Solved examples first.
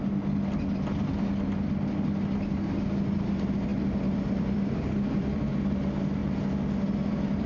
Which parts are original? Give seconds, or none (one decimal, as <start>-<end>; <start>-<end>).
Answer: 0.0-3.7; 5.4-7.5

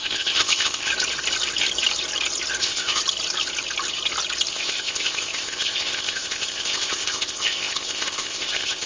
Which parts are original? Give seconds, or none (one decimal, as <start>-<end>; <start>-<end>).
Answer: 0.9-2.6; 3.0-4.5

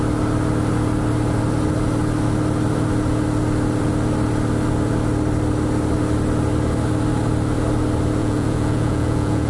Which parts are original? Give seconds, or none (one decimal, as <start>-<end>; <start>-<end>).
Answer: 0.0-8.2